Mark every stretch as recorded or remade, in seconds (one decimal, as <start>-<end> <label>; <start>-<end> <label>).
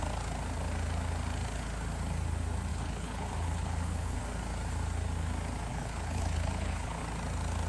0.0-2.7 recorded; 2.7-4.2 remade; 4.2-5.7 recorded; 5.7-7.0 remade; 7.0-7.7 recorded